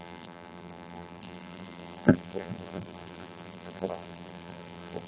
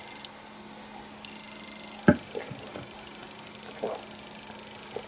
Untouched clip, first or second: second